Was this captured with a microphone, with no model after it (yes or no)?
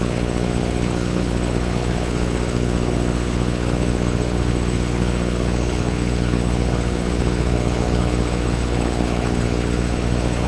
no